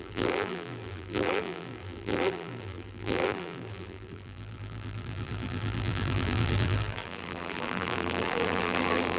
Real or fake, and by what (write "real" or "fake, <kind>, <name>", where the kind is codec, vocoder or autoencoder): fake, vocoder, BigVGAN v2